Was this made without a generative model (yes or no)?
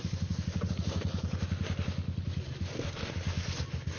yes